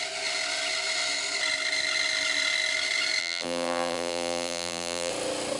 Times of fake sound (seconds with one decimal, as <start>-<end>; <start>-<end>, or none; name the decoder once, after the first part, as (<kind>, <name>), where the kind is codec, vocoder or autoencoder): 3.2-5.1 (vocoder, BigVGAN v2)